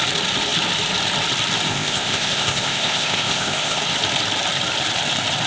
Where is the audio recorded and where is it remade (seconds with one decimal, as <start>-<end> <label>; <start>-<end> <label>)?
0.0-1.7 recorded; 1.7-3.8 remade; 3.8-5.5 recorded